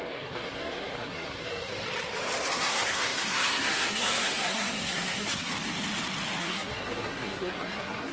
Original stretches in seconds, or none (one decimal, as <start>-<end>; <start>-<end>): 1.7-2.5; 5.5-6.4